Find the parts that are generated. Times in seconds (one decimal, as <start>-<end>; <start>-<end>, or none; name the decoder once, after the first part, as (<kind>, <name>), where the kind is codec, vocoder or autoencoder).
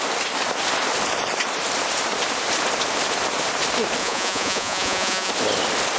4.0-5.3 (vocoder, Vocos)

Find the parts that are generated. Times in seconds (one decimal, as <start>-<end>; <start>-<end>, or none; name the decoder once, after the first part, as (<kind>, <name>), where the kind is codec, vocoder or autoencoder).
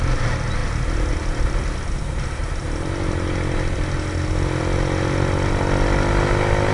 none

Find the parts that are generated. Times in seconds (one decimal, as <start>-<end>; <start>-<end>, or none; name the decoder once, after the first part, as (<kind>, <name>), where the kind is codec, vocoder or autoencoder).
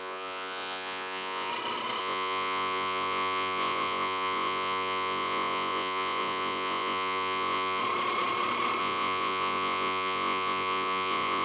0.0-1.5 (vocoder, Vocos); 2.0-7.8; 8.8-11.4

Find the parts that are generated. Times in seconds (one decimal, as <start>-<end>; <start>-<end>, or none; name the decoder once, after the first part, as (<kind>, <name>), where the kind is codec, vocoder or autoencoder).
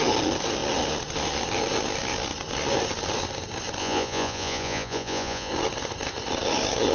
3.8-5.5 (vocoder, Vocos)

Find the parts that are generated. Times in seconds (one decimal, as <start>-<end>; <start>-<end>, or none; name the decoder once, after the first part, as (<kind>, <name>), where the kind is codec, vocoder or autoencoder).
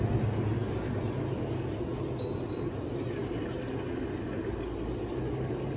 none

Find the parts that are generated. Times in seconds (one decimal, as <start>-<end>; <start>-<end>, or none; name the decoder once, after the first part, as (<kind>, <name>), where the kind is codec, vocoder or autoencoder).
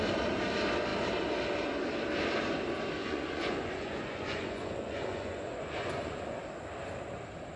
3.0-6.4 (vocoder, Vocos)